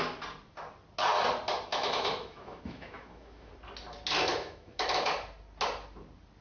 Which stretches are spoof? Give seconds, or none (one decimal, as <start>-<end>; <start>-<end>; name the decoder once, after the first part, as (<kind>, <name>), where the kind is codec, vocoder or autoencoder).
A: 1.7-3.5 (autoencoder, DAC-VAE); 4.3-5.1